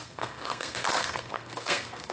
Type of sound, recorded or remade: remade